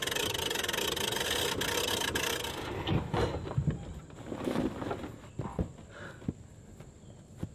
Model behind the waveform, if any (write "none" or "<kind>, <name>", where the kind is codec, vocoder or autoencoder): none